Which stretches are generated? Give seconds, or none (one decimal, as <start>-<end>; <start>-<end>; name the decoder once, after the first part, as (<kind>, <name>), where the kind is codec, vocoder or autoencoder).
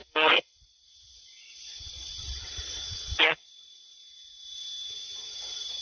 0.0-3.5 (vocoder, WaveNeXt)